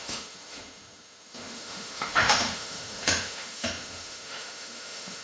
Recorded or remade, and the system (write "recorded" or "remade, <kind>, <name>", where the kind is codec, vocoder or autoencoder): remade, autoencoder, DAC-VAE